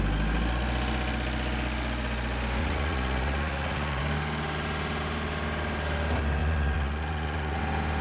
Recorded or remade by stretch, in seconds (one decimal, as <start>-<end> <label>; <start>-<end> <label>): 0.0-2.6 recorded; 2.6-4.0 remade; 4.0-6.4 recorded; 6.4-7.6 remade; 7.6-8.0 recorded